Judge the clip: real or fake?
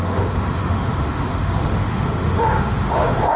fake